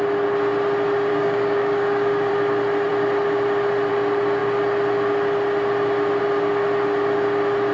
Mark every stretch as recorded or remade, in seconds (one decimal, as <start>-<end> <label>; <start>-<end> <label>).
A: 0.0-1.1 recorded; 1.1-2.3 remade; 2.3-7.7 recorded